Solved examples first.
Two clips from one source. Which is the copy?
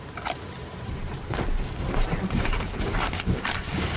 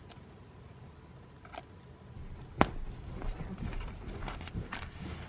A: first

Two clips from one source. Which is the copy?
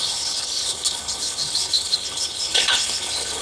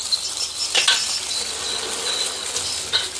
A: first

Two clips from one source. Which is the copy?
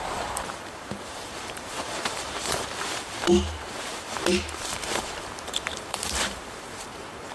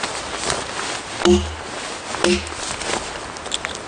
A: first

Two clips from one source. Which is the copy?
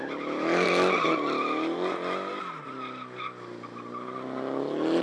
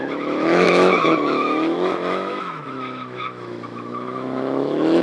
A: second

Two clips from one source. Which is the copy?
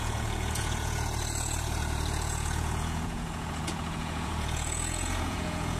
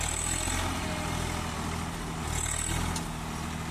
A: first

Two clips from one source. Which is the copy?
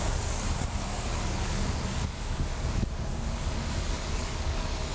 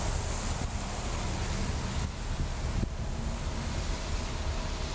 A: first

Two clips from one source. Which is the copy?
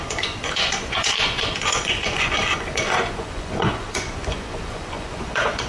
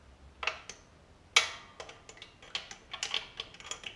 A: first